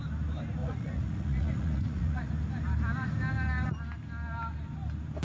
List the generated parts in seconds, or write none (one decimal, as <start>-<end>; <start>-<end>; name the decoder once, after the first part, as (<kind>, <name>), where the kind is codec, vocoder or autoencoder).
0.6-2.3 (vocoder, Vocos)